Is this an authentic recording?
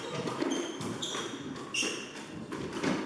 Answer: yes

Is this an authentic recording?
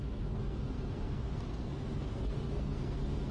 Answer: no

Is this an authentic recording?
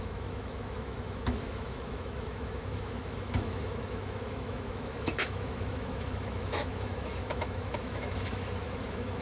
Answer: no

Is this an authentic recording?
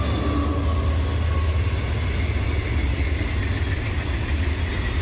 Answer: yes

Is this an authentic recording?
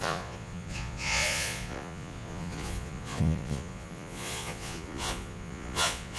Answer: no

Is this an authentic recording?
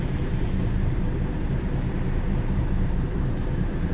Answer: no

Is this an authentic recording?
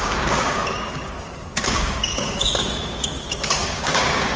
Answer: no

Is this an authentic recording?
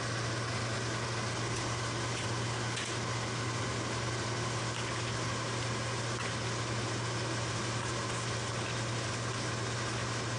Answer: yes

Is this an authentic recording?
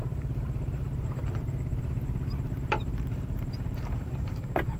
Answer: no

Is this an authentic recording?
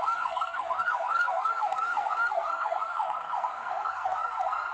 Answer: no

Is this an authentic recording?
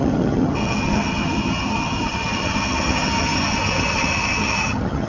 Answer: no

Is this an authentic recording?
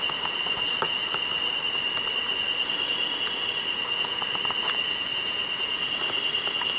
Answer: yes